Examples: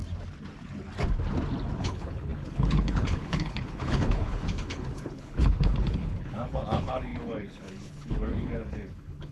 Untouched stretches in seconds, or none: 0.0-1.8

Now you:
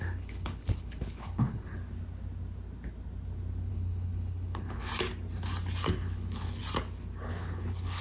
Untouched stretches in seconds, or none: 1.7-3.7; 4.9-5.9; 6.6-7.3

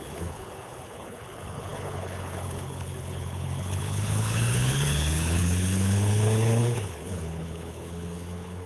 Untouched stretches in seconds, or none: none

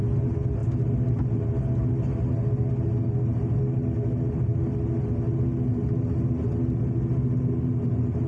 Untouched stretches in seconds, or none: 0.0-8.3

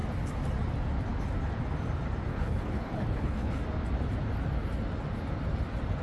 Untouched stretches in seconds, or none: 0.0-2.3; 3.6-6.0

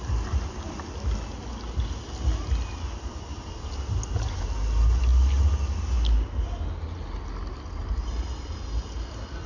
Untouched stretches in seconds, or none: 0.0-9.5